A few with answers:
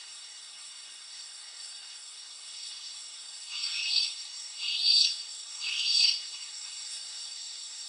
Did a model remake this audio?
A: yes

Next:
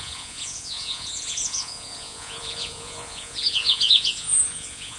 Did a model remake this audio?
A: yes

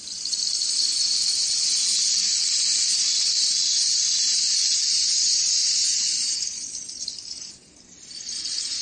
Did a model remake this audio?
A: yes